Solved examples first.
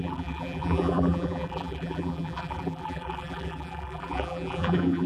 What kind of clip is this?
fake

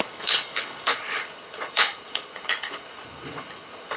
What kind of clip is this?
fake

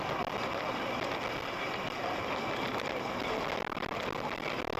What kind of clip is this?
real